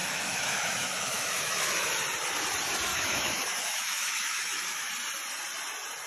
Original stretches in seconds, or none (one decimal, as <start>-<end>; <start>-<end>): 1.9-2.9; 4.9-6.1